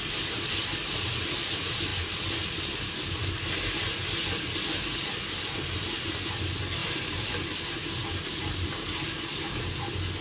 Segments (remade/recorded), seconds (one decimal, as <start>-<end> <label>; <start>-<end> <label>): 0.0-10.2 recorded